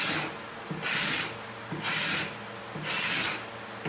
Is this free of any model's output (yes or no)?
yes